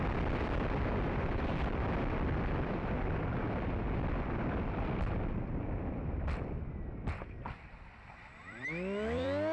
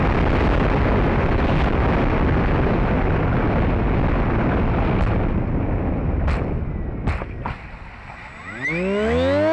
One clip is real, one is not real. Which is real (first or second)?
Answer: second